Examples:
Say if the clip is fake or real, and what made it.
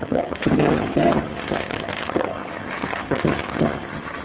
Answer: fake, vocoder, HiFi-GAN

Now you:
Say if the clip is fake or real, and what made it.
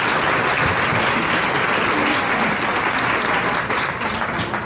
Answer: real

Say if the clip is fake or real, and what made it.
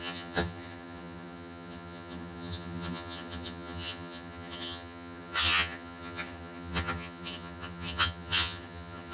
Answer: fake, vocoder, HiFi-GAN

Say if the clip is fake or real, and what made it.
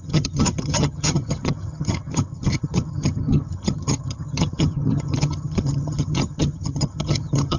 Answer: fake, vocoder, HiFi-GAN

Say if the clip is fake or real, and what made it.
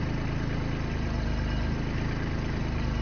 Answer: real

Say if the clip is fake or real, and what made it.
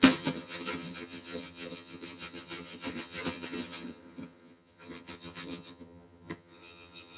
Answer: fake, vocoder, HiFi-GAN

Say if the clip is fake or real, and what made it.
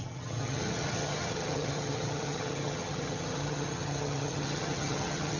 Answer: fake, vocoder, HiFi-GAN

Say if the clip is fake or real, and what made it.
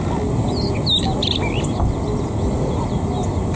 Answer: real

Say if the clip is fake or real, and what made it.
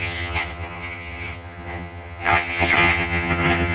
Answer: fake, vocoder, HiFi-GAN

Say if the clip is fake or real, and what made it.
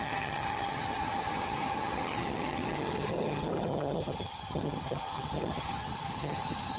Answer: fake, vocoder, HiFi-GAN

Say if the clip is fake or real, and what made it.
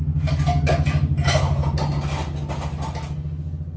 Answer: real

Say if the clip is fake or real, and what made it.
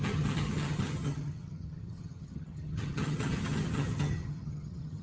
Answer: fake, vocoder, HiFi-GAN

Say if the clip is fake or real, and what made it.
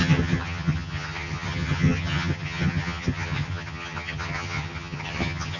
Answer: fake, vocoder, HiFi-GAN